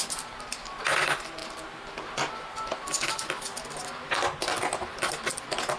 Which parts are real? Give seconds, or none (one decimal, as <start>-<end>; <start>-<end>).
0.0-5.8